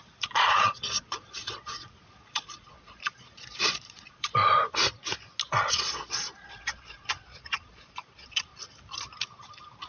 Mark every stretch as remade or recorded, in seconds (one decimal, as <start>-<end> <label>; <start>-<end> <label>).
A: 0.0-4.4 remade; 4.4-5.7 recorded; 5.7-8.5 remade; 8.5-9.9 recorded